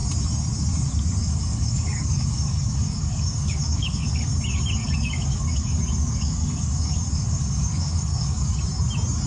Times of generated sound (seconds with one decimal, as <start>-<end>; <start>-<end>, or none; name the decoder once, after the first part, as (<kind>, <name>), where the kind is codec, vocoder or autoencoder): 1.2-4.3 (codec, DAC); 4.8-8.6